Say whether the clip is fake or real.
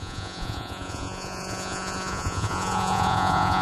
fake